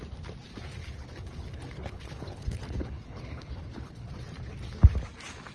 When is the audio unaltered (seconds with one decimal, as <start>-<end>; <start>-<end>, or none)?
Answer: 0.0-0.8; 4.1-5.5